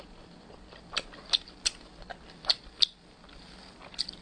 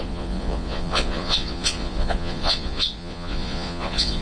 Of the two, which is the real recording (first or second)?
first